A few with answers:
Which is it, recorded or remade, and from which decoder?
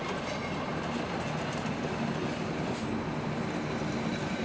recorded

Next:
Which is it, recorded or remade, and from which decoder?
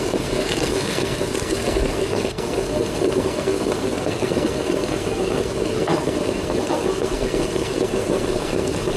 remade, codec, SNAC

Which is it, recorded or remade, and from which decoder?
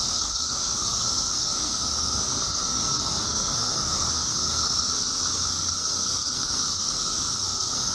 remade, codec, SNAC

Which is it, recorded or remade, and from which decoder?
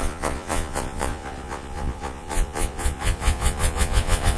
remade, vocoder, Vocos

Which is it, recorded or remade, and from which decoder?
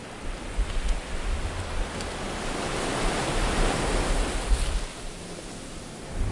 recorded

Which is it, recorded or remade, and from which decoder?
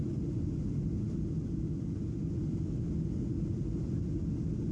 recorded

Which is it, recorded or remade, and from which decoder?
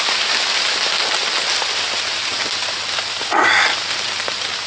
recorded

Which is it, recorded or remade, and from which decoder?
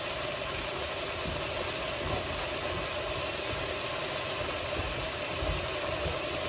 recorded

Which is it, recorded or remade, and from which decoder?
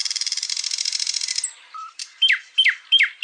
remade, vocoder, BigVGAN v2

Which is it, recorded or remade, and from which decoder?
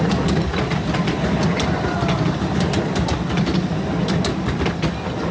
recorded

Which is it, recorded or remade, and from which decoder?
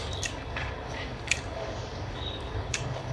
remade, codec, DAC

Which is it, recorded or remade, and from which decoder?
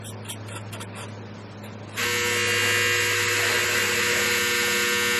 recorded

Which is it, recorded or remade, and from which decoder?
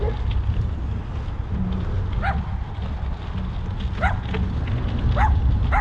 recorded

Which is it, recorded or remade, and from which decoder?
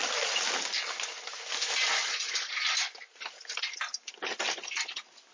recorded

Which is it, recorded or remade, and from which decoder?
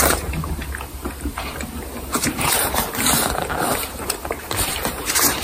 remade, vocoder, BigVGAN v2